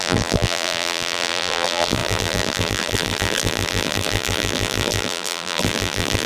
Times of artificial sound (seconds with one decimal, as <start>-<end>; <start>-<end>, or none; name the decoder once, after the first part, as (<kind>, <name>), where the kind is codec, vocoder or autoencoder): 0.0-6.3 (vocoder, BigVGAN v2)